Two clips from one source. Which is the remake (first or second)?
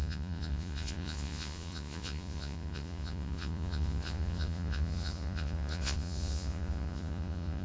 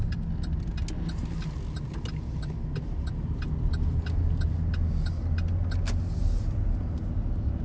first